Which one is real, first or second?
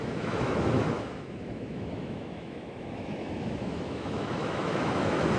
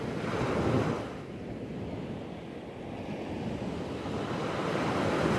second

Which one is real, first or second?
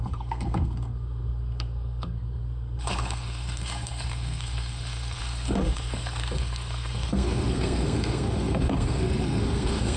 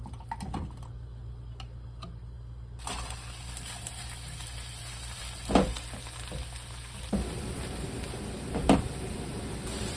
second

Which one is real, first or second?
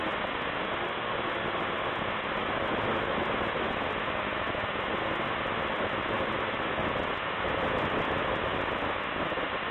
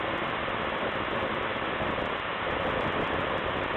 first